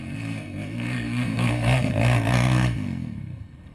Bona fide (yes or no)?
no